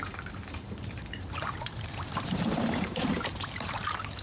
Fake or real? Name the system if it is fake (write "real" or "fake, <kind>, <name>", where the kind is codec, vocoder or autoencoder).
fake, vocoder, BigVGAN v2